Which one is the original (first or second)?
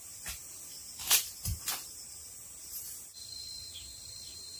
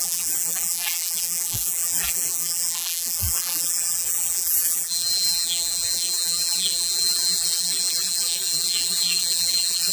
first